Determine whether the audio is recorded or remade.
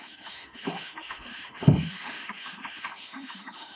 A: remade